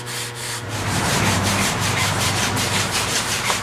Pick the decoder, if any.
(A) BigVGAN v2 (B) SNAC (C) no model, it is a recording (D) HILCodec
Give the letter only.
A